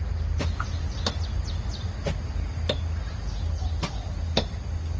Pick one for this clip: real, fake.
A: real